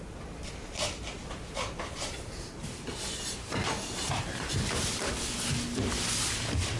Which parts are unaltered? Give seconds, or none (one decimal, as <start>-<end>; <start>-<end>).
0.0-1.2; 5.1-6.8